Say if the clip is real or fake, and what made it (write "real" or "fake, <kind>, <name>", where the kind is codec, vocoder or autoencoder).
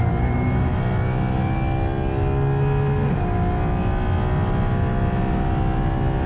real